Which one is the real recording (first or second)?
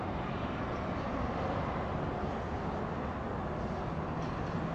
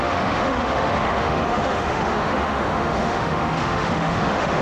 first